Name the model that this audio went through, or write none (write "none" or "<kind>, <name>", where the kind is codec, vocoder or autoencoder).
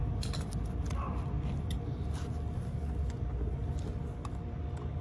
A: none